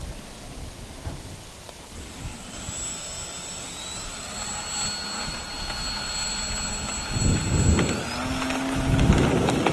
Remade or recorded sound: recorded